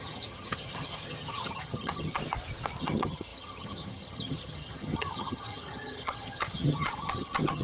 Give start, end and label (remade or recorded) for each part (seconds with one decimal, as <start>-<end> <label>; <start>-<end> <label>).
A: 0.0-2.2 remade; 2.2-2.8 recorded; 2.8-7.6 remade